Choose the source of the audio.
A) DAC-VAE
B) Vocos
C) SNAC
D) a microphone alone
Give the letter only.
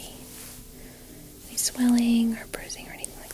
D